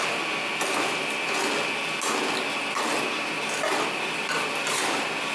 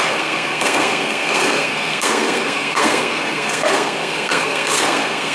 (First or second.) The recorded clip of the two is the first